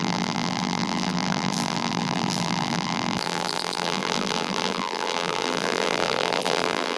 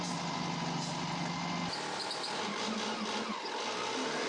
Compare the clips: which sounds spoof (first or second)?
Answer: first